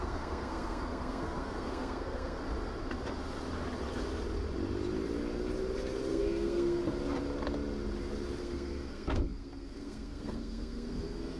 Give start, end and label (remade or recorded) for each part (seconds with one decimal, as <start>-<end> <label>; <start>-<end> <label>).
0.0-2.4 remade; 2.4-6.1 recorded; 6.1-6.8 remade; 6.8-8.4 recorded; 8.4-11.4 remade